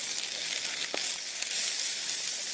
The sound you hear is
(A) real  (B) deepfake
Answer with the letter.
A